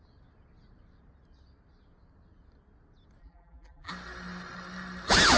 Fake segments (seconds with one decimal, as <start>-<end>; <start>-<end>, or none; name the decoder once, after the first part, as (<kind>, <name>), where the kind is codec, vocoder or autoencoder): 3.2-3.9 (vocoder, BigVGAN v2)